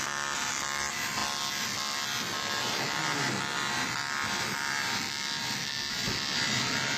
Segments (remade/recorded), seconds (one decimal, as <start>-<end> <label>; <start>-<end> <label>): 0.0-7.0 recorded